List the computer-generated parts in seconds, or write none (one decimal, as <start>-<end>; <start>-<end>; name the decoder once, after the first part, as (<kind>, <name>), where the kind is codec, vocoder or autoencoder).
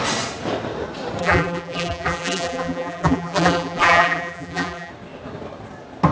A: 1.2-4.9 (vocoder, BigVGAN v2)